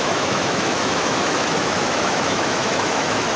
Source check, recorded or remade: remade